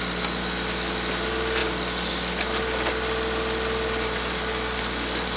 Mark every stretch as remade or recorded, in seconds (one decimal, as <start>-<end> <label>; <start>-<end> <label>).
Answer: 0.0-5.4 recorded